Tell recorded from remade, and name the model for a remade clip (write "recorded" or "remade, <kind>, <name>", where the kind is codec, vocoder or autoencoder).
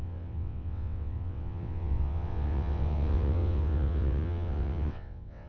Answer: remade, vocoder, WaveNeXt